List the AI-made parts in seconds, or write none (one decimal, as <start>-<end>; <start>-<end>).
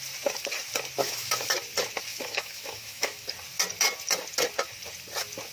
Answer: 1.0-1.5; 2.1-3.3